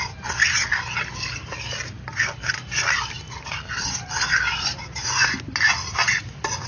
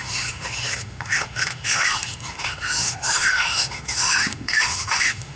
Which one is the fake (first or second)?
second